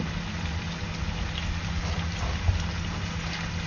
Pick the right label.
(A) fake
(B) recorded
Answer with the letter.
B